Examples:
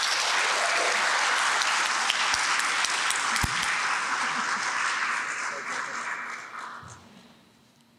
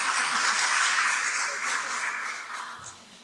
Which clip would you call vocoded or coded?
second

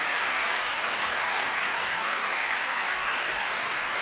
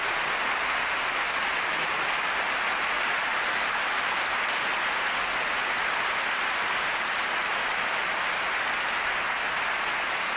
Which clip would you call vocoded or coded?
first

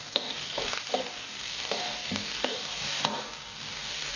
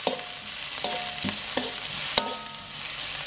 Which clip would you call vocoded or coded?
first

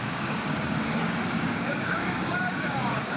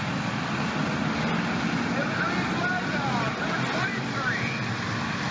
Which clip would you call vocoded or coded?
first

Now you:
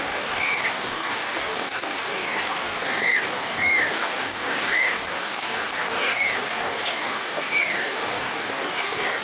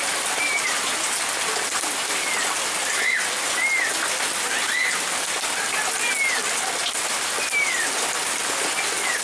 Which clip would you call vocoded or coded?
first